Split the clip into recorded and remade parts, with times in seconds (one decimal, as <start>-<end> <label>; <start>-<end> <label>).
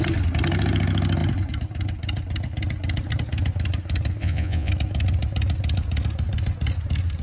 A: 0.0-4.2 recorded; 4.2-4.7 remade; 4.7-7.2 recorded